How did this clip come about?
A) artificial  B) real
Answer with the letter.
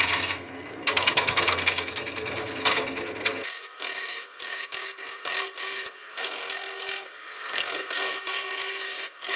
A